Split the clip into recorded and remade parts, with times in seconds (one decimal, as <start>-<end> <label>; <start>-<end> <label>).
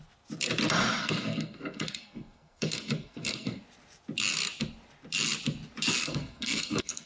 0.0-1.0 recorded; 1.0-3.6 remade; 3.6-6.0 recorded; 6.0-7.1 remade